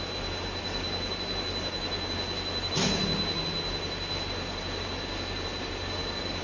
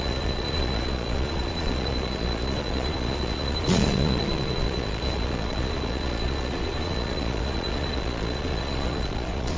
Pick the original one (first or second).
first